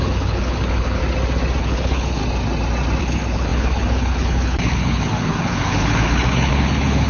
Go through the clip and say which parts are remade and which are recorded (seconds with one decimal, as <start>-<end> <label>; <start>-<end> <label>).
0.0-1.0 remade; 1.0-1.6 recorded; 1.6-2.2 remade; 2.2-3.0 recorded; 3.0-7.1 remade